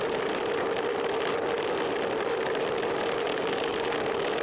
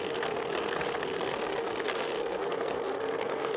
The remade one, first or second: second